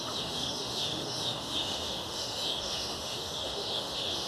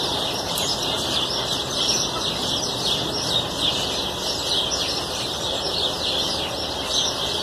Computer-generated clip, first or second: first